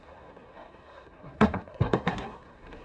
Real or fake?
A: fake